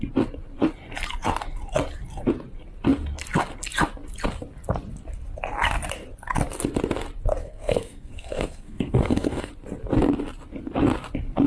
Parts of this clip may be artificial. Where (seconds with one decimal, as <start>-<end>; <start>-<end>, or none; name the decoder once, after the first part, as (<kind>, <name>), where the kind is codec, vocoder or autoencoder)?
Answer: 7.4-9.5 (codec, SNAC)

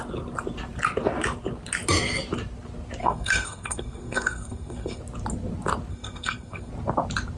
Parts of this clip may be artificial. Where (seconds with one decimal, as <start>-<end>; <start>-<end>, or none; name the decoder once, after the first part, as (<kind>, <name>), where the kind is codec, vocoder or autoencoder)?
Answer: 3.0-5.0 (codec, SNAC); 5.9-6.7

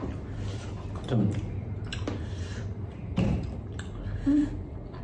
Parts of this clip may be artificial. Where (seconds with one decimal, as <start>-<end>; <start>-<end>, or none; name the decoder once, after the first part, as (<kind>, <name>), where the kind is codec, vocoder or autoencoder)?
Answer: none

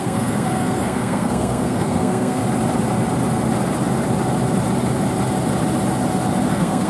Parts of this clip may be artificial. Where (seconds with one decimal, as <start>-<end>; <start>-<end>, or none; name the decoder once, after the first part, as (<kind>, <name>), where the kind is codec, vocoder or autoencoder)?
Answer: 0.0-2.4 (codec, SNAC); 6.5-6.9

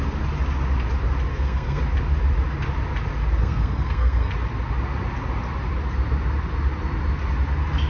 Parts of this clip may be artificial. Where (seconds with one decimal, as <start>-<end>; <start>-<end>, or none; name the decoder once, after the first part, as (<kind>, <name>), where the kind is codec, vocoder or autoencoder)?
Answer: 1.3-1.8 (codec, SNAC); 3.4-4.3

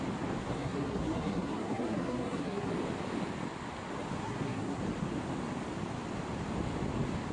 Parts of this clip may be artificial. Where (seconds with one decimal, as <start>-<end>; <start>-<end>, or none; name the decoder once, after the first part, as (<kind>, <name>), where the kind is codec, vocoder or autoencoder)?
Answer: 0.4-2.7 (codec, SNAC); 4.2-4.8

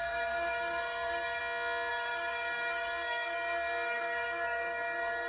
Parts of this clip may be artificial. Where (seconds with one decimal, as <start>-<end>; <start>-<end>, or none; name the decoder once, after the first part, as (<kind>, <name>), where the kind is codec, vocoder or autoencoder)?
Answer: 0.0-1.4 (codec, SNAC); 1.9-5.3